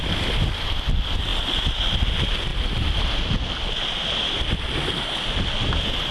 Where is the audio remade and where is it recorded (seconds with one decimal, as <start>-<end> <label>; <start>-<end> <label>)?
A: 0.0-6.1 recorded